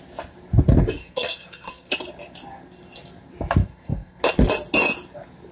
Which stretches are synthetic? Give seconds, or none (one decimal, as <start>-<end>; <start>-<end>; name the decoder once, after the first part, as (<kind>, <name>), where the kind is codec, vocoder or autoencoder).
1.0-1.9 (codec, SNAC); 3.6-4.2